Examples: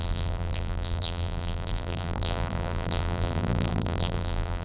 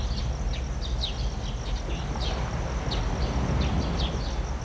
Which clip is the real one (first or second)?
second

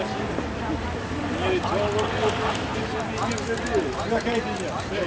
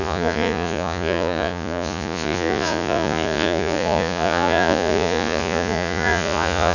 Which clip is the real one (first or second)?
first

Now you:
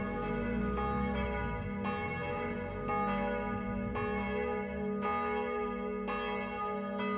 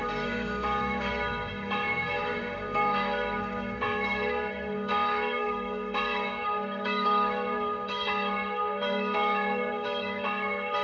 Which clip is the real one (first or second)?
first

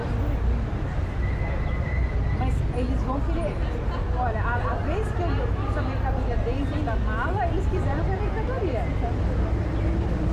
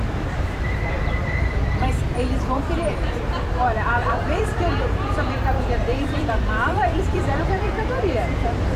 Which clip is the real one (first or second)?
first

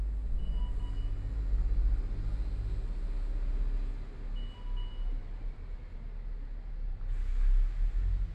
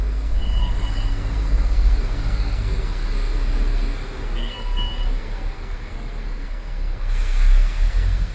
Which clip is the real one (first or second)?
first